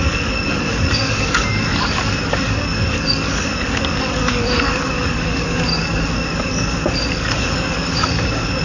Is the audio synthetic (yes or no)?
yes